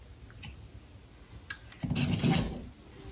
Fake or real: real